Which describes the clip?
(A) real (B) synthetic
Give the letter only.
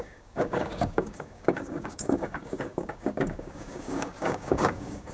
B